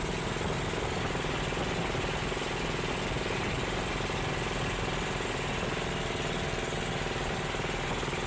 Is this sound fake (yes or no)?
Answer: no